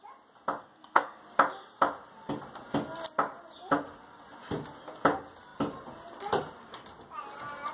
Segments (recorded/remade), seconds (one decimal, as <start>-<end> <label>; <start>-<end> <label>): 0.0-0.6 recorded; 0.6-1.2 remade; 1.2-7.7 recorded